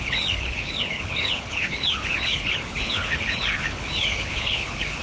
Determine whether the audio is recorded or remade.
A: remade